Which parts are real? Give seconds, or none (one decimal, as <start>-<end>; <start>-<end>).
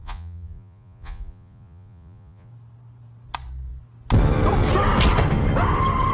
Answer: 2.5-6.1